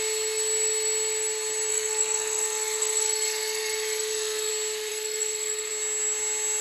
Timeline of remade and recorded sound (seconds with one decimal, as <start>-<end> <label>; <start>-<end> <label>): 0.0-1.7 recorded; 1.7-4.5 remade; 4.5-4.9 recorded; 4.9-5.7 remade; 5.7-6.6 recorded